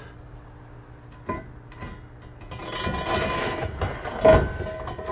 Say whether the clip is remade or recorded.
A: recorded